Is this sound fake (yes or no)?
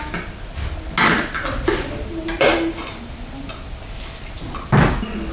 no